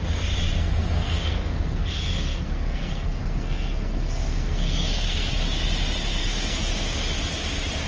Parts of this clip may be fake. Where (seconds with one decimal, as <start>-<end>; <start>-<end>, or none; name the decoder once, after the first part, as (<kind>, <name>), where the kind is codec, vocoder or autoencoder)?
0.6-5.3 (codec, SNAC); 6.2-7.0